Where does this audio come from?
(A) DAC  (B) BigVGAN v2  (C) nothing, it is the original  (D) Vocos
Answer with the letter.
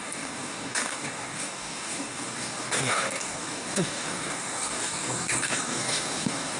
A